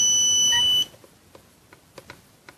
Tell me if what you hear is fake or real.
real